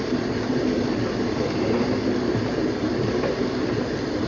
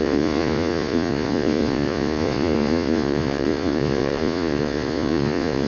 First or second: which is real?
first